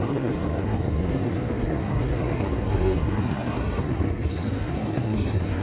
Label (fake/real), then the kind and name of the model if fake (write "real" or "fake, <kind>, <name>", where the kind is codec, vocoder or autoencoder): fake, codec, SNAC